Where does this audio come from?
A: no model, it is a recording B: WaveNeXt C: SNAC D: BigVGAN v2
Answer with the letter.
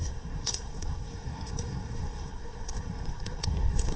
C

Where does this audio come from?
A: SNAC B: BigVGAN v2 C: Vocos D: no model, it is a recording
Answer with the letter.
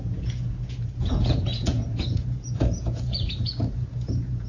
C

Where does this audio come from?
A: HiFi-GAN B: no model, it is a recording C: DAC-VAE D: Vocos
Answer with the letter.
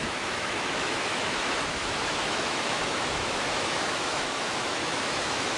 C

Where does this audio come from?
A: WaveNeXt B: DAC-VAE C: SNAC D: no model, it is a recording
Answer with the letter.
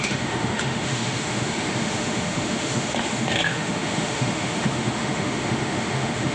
B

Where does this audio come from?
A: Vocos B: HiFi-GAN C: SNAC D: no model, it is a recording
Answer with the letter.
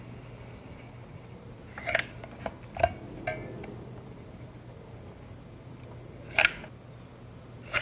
D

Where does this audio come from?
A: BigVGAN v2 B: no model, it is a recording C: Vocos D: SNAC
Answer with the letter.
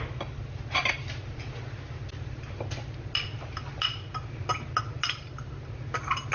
B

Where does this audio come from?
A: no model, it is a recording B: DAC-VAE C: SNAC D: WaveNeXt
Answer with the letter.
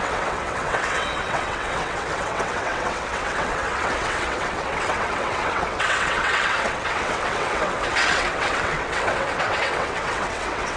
D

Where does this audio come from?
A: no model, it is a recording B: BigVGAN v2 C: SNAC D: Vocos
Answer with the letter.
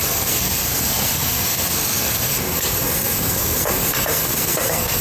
C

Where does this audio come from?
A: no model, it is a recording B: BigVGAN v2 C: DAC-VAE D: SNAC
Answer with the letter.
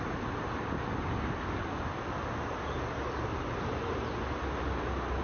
A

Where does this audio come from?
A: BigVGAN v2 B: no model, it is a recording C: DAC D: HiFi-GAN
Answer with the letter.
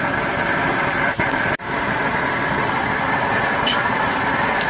A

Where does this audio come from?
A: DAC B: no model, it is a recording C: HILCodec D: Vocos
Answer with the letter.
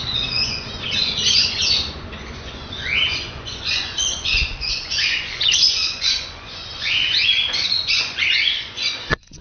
D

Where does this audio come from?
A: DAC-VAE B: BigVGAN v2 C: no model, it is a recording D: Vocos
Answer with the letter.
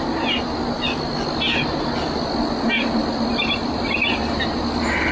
C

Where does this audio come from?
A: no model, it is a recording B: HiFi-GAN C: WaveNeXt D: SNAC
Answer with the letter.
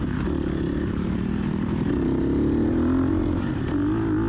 A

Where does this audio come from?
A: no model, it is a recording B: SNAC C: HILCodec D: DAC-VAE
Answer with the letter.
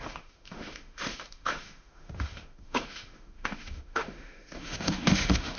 D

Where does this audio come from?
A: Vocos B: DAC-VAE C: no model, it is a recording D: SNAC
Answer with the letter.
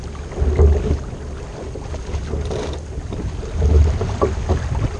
C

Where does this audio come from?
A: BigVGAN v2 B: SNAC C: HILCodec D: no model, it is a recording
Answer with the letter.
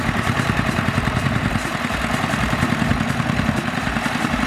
A